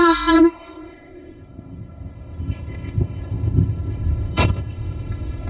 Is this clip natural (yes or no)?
no